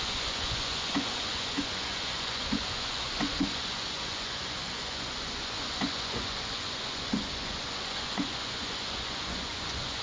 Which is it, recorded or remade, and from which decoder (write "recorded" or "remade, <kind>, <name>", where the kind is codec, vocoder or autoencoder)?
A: remade, vocoder, Vocos